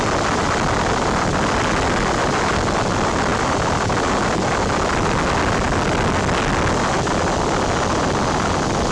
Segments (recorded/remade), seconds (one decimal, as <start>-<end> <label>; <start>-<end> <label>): 0.0-8.9 recorded